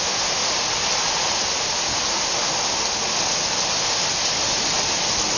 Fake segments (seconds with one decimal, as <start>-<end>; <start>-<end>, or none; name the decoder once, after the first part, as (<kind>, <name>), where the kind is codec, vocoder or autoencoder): none